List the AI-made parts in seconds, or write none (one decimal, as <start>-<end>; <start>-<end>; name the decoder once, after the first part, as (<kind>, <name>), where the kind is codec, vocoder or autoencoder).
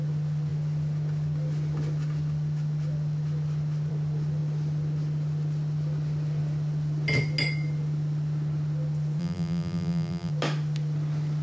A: 9.2-10.3 (vocoder, BigVGAN v2)